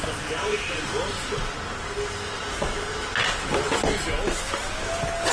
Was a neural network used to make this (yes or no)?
no